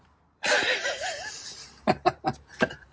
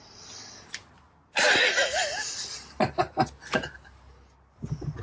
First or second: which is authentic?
second